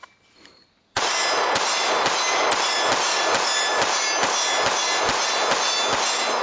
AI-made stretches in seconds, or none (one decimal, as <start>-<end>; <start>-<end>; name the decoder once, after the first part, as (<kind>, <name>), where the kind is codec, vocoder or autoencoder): none